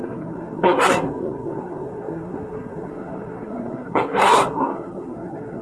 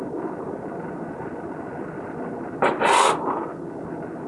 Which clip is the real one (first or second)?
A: second